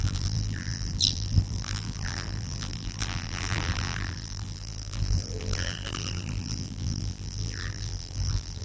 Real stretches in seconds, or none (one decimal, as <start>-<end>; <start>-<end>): none